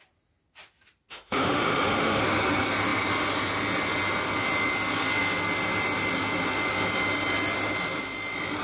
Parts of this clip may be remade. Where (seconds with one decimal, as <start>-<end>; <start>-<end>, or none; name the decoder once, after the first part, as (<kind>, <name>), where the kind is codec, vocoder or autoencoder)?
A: 1.1-2.2 (autoencoder, DAC-VAE)